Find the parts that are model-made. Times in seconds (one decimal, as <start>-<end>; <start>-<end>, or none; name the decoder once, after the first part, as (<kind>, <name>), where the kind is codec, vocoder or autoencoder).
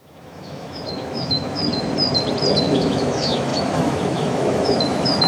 0.0-1.6 (autoencoder, DAC-VAE); 2.6-5.3